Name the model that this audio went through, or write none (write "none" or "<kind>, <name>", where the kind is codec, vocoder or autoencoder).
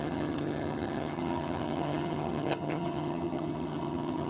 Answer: vocoder, HiFi-GAN